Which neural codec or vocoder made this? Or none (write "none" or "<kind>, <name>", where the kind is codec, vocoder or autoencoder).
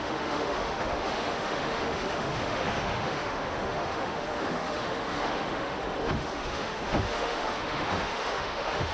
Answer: autoencoder, DAC-VAE